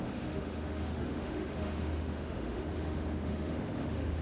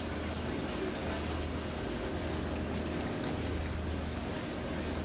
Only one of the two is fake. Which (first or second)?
first